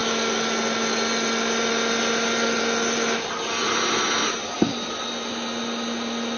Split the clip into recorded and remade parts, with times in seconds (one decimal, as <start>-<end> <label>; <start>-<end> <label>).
0.0-4.4 recorded; 4.4-5.1 remade; 5.1-6.4 recorded